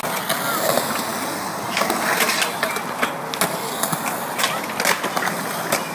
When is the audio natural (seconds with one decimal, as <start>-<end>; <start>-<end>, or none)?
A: 0.0-5.9